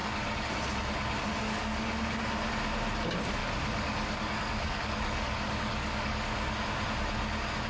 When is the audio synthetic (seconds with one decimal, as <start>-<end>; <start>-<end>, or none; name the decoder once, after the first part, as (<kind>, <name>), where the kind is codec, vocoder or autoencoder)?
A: 0.0-0.5 (codec, DAC); 1.3-2.5; 3.4-6.6